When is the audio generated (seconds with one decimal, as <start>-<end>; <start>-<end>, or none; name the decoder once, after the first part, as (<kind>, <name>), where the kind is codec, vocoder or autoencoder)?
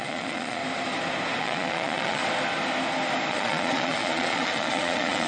0.0-0.6 (vocoder, Vocos); 1.4-2.2; 3.3-5.3